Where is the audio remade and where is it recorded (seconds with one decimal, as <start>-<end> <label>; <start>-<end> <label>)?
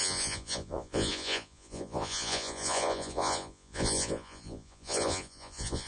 0.0-5.9 remade